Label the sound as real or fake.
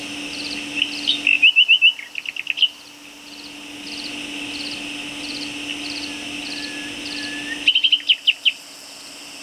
real